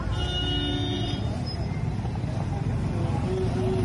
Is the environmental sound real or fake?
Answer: real